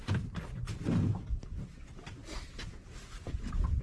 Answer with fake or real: real